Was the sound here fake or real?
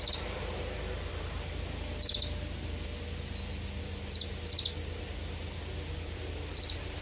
real